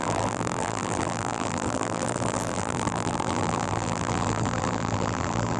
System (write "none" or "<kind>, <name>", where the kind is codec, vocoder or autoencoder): vocoder, BigVGAN v2